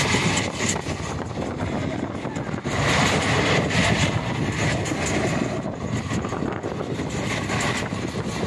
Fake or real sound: real